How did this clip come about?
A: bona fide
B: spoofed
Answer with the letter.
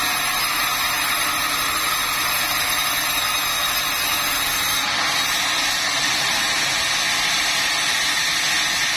A